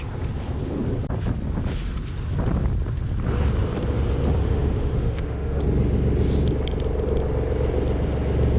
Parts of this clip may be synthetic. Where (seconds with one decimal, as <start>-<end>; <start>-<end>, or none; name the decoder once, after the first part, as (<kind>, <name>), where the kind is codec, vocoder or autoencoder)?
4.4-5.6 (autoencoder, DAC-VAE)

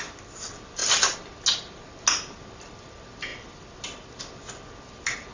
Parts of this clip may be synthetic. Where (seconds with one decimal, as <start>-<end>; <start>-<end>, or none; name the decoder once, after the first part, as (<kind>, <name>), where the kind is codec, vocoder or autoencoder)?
none

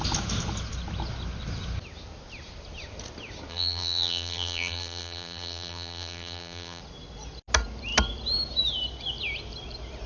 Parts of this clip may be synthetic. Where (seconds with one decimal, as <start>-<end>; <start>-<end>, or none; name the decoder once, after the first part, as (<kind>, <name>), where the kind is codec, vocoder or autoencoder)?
3.5-6.8 (vocoder, BigVGAN v2)

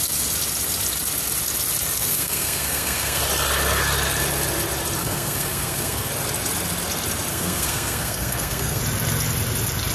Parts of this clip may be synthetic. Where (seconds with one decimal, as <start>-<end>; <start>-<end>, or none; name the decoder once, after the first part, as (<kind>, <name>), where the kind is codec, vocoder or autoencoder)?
2.0-3.2 (codec, SNAC); 5.0-6.1; 7.3-8.8